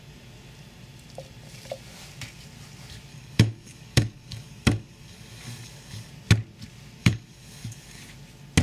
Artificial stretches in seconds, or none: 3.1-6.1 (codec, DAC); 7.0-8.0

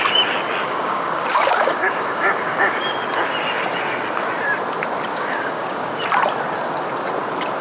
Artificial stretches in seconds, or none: 0.6-2.8 (codec, DAC); 5.1-6.0

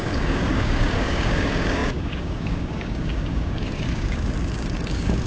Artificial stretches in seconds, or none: 0.0-5.3 (codec, DAC)

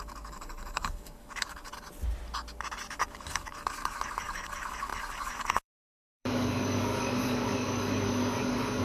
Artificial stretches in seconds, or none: 0.0-1.7 (codec, DAC); 2.9-8.8

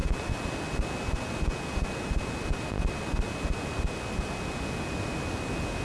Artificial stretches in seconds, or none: none

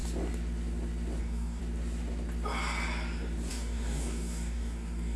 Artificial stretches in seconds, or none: 1.2-1.6 (codec, DAC); 3.5-5.2